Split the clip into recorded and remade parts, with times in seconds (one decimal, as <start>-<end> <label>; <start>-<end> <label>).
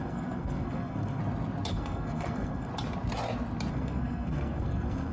0.0-1.2 remade; 1.2-1.7 recorded; 1.7-2.7 remade; 2.7-3.7 recorded; 3.7-5.1 remade